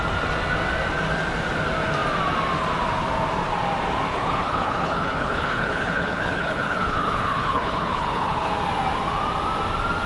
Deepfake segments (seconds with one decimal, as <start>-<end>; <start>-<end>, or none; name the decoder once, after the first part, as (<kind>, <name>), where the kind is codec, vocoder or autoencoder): 4.1-8.5 (codec, HILCodec)